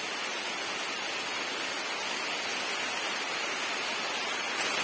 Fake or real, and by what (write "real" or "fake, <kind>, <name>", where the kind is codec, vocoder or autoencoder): real